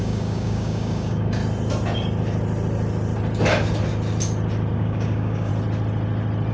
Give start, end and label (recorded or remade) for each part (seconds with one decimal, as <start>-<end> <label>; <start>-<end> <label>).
0.0-1.4 remade; 1.4-4.7 recorded; 4.7-5.5 remade; 5.5-6.5 recorded